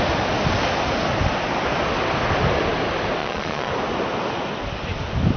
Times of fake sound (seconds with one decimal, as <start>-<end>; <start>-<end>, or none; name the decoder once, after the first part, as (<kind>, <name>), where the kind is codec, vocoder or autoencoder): 3.2-3.7 (vocoder, Vocos)